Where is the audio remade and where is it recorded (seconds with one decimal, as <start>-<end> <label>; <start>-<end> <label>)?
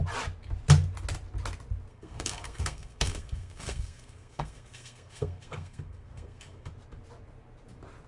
0.0-1.9 recorded; 1.9-6.7 remade; 6.7-8.1 recorded